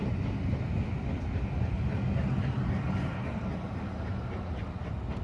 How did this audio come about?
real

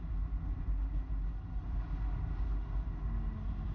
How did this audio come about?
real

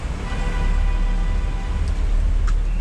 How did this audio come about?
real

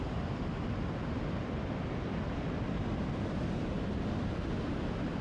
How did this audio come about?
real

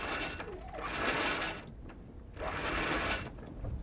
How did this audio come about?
real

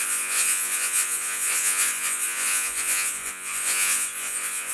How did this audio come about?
fake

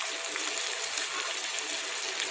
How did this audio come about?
real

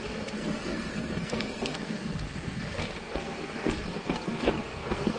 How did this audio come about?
fake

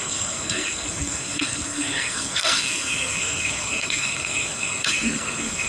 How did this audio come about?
fake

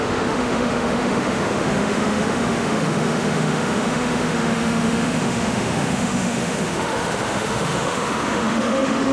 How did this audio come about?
fake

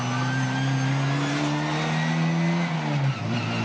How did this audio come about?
real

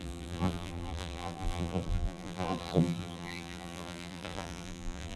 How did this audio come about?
fake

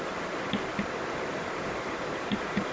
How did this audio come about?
real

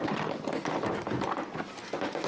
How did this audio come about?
real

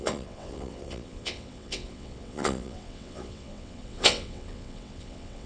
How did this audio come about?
fake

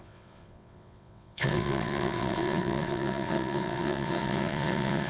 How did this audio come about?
fake